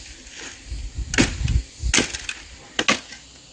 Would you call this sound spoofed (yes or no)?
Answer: no